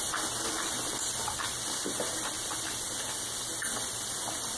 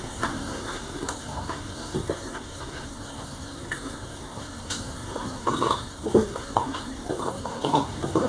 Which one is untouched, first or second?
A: first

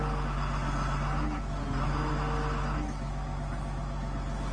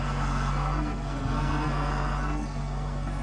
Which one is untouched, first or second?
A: first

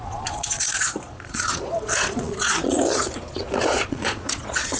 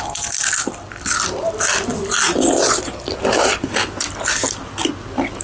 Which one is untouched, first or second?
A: second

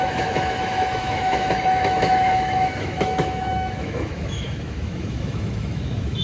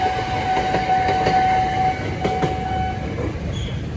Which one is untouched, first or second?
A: second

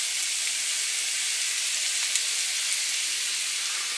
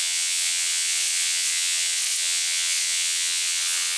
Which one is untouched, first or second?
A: first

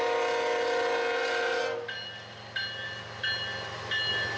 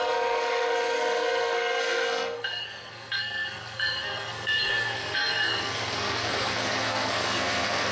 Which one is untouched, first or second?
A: first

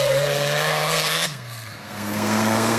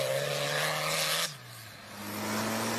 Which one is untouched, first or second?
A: second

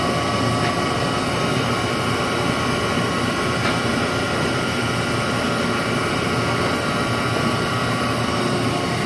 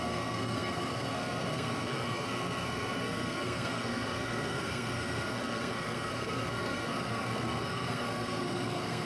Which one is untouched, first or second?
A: first